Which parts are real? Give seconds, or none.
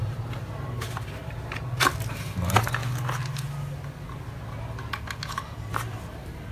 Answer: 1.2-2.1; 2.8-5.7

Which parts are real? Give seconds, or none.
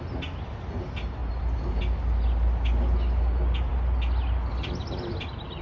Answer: 0.0-1.2; 1.8-5.6